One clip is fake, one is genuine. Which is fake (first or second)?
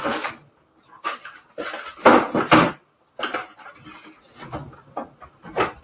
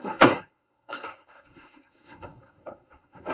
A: second